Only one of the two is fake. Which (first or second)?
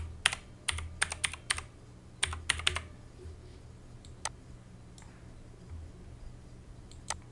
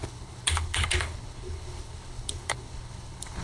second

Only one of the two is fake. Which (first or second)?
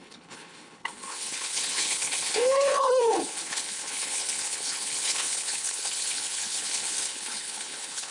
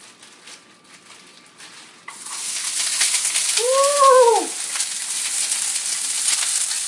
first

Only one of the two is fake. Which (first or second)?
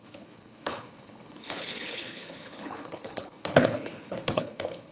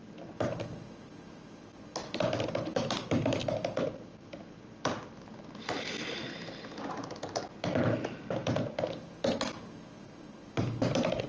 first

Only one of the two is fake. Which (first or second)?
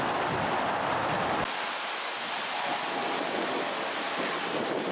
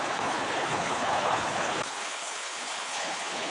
second